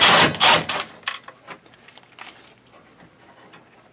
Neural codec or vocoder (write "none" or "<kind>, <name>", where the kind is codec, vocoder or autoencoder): none